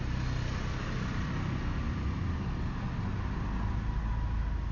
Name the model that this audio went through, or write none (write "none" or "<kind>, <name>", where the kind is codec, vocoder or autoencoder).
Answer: none